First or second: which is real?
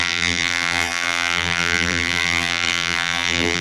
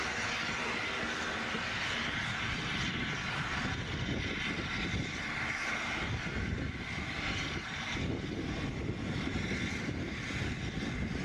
second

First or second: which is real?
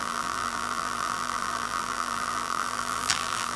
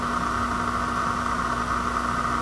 second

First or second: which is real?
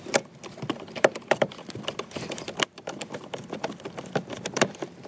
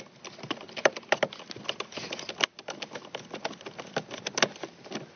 second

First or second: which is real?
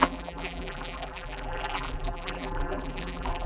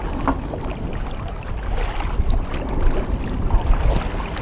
second